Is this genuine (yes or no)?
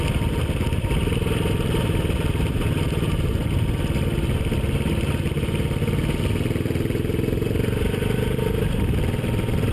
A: yes